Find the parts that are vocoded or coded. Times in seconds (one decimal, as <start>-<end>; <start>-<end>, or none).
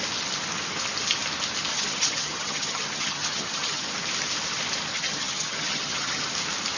1.7-3.9; 4.9-6.2